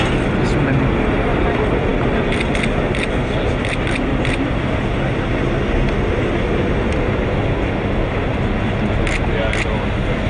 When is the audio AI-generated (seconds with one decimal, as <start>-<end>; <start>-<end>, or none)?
none